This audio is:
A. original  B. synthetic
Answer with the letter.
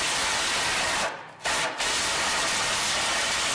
A